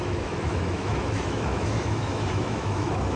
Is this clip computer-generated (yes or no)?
yes